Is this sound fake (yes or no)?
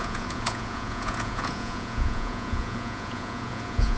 yes